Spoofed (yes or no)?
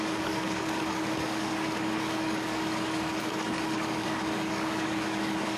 yes